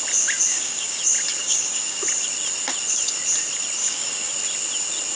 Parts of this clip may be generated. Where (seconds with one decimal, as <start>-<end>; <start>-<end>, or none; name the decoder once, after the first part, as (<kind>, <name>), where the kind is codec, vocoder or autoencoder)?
0.5-1.0 (codec, DAC); 1.4-2.0; 3.8-4.3